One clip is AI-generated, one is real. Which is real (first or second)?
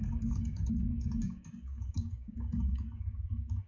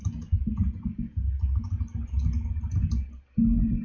second